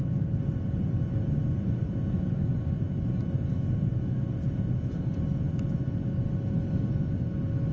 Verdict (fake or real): real